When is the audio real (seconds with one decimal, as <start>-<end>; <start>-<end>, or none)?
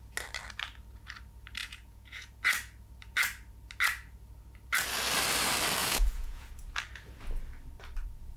0.0-1.6; 2.4-5.8; 6.5-8.4